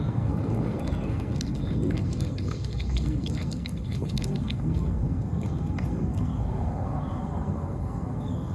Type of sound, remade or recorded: remade